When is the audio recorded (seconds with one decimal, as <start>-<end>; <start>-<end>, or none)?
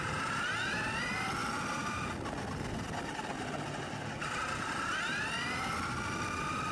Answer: 0.0-6.7